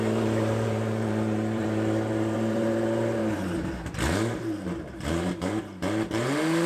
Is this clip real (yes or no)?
no